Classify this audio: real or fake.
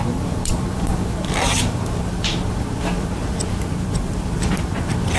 fake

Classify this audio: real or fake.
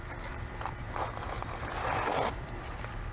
fake